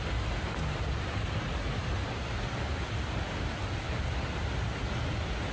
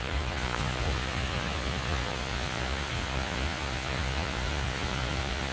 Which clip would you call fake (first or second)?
second